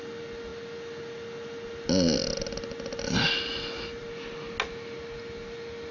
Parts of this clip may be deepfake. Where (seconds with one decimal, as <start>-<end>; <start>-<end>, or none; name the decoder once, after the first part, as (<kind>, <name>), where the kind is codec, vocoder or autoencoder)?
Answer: none